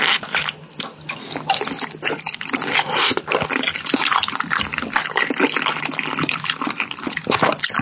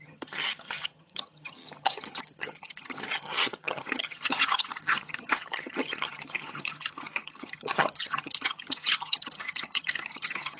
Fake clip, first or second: second